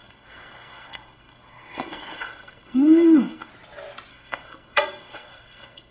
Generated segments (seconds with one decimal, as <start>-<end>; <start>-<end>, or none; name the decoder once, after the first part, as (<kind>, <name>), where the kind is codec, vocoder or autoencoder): 0.0-3.5 (codec, SNAC); 4.1-5.9